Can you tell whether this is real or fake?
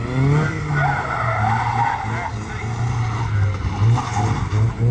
real